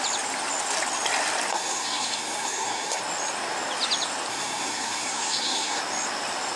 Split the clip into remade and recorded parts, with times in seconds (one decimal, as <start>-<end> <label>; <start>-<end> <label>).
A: 0.0-1.5 recorded; 1.5-3.0 remade; 3.0-4.3 recorded; 4.3-5.8 remade; 5.8-6.6 recorded